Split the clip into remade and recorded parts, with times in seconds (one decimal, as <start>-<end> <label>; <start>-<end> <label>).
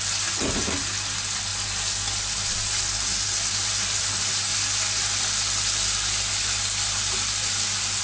0.0-8.0 recorded